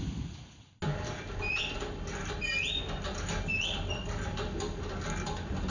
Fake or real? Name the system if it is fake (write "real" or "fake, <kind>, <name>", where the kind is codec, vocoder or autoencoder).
real